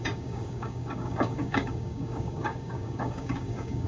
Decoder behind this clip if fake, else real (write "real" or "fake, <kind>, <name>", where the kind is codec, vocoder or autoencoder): fake, codec, DAC